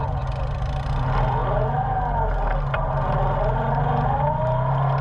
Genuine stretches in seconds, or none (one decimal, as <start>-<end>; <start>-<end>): 0.0-5.0